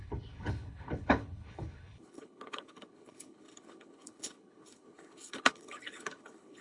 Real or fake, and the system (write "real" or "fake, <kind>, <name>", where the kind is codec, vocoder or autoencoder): fake, codec, HILCodec